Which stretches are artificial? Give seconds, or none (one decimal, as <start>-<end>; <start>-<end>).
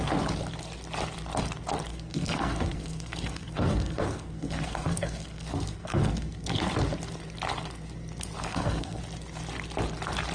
1.9-6.6; 8.5-9.0